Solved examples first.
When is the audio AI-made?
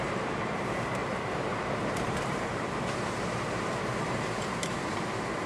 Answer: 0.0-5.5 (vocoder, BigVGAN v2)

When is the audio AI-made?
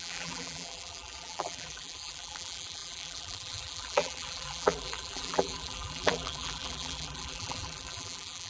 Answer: 0.0-8.5 (vocoder, BigVGAN v2)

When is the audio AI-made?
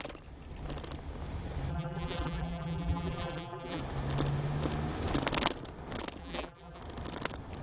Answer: 1.7-3.8 (vocoder, BigVGAN v2); 6.2-6.8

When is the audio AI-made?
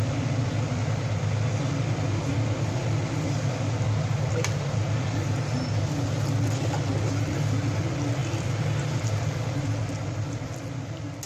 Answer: none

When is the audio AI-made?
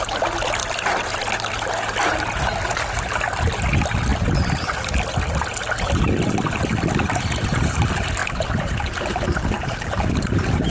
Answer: 0.6-1.7 (vocoder, BigVGAN v2)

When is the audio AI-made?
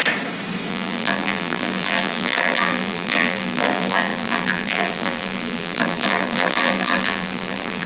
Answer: 0.7-7.9 (vocoder, BigVGAN v2)